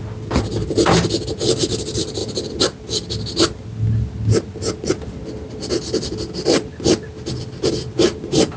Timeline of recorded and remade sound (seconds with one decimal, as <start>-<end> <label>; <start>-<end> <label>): 0.0-8.6 recorded